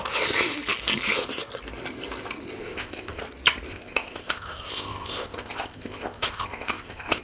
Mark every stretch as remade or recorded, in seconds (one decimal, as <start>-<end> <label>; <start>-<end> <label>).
0.0-2.6 recorded; 2.6-3.2 remade; 3.2-3.7 recorded; 3.7-7.2 remade